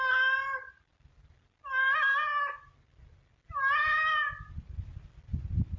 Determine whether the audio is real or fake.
real